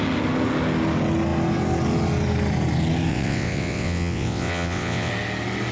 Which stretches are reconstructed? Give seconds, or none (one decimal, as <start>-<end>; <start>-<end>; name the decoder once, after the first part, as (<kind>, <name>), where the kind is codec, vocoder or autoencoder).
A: 3.1-5.1 (vocoder, WaveNeXt)